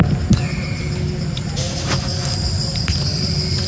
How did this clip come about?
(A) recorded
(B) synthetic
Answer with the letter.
A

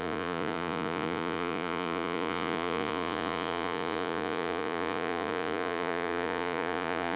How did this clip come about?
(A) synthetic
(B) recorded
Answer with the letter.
A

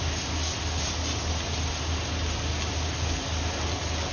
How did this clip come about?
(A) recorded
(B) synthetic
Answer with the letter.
A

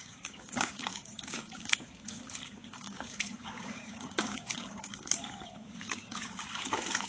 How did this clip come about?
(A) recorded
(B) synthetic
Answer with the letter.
B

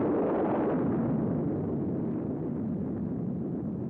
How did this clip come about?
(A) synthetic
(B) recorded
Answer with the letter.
B